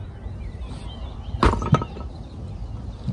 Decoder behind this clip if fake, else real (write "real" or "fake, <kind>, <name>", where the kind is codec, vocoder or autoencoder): real